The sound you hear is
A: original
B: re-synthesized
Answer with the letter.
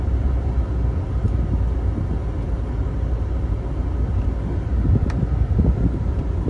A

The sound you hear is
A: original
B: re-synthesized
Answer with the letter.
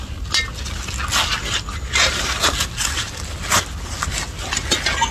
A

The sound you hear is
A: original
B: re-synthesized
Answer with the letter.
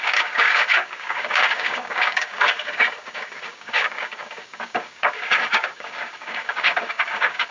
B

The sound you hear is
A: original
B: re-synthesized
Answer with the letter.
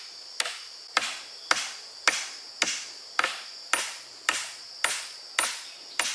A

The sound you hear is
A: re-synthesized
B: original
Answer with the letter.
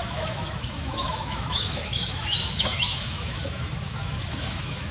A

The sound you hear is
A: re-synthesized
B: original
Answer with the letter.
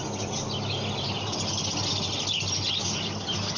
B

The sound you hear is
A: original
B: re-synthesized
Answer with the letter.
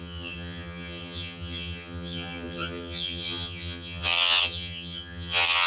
B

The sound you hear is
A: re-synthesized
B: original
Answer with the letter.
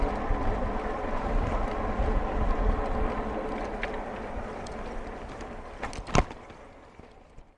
B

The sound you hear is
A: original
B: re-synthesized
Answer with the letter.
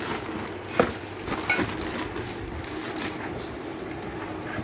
A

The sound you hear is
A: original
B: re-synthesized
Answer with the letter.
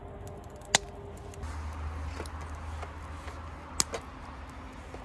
A